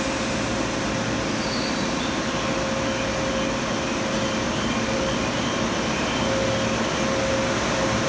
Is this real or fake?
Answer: real